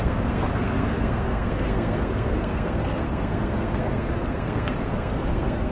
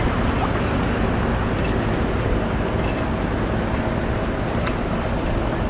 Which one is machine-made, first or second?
first